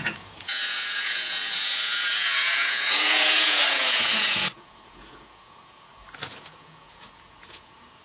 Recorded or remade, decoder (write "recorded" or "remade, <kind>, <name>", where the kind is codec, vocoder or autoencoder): remade, vocoder, Vocos